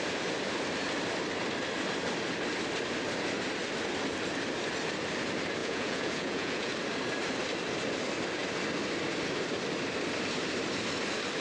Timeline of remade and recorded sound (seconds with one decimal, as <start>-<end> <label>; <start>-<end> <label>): 0.0-5.6 recorded; 5.6-6.7 remade; 6.7-11.4 recorded